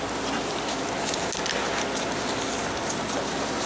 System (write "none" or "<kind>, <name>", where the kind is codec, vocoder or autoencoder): none